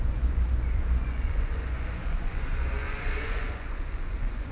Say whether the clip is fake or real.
fake